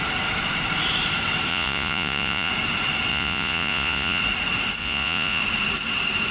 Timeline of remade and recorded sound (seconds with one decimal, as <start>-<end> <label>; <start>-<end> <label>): 0.0-1.5 recorded; 1.5-2.5 remade; 2.5-3.1 recorded; 3.1-4.2 remade; 4.2-4.8 recorded; 4.8-5.4 remade; 5.4-6.3 recorded